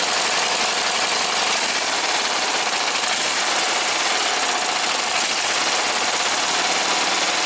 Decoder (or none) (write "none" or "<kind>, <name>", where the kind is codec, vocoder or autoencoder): none